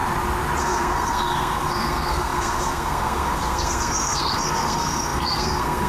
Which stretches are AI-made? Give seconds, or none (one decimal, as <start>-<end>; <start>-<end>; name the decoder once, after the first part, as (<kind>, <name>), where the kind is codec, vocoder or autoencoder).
0.6-5.9 (codec, SNAC)